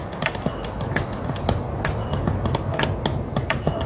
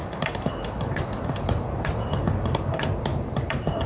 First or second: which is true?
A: first